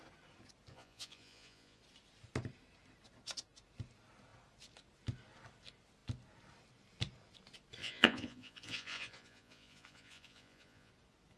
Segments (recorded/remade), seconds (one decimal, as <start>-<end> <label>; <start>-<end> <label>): 0.0-0.7 recorded; 0.7-1.8 remade; 1.8-7.8 recorded; 7.8-10.9 remade; 10.9-11.4 recorded